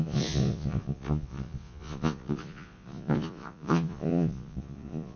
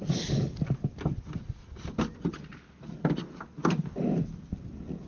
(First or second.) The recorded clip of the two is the second